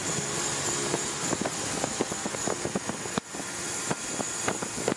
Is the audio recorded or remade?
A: recorded